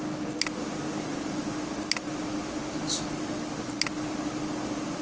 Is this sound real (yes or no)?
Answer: yes